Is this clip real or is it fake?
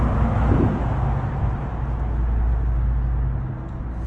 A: real